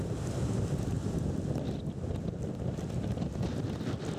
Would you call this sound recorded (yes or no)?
yes